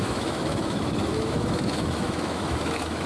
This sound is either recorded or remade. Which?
remade